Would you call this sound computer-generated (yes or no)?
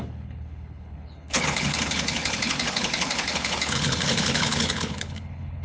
yes